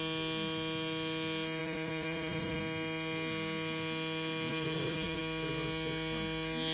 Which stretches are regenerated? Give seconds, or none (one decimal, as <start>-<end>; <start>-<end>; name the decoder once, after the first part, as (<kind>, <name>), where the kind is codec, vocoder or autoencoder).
1.6-2.6 (vocoder, Vocos); 4.5-5.2